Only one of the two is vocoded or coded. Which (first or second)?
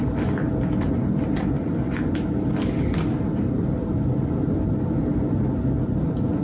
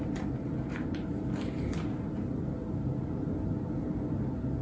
first